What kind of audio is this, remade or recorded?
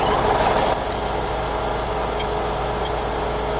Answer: recorded